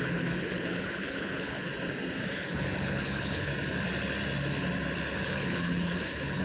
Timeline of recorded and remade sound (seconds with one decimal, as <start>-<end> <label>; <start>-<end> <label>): 0.0-1.7 remade; 1.7-2.3 recorded; 2.3-3.5 remade; 3.5-5.2 recorded; 5.2-6.4 remade

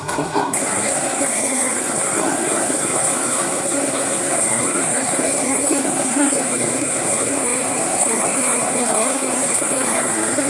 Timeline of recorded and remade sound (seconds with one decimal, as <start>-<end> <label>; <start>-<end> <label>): 0.0-10.5 remade

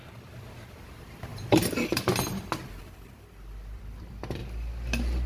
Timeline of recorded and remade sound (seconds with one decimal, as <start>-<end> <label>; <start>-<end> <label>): 0.0-4.4 remade; 4.4-5.3 recorded

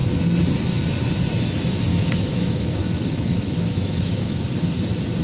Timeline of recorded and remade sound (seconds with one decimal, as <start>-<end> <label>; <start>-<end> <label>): 0.0-1.9 recorded; 1.9-4.4 remade; 4.4-5.2 recorded

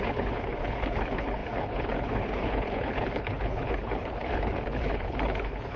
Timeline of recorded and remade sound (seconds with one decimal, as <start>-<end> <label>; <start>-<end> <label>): 0.0-5.8 remade